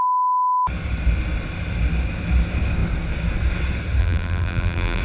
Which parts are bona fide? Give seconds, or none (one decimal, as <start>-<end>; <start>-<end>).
0.0-4.0